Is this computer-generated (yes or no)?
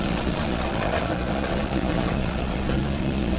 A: yes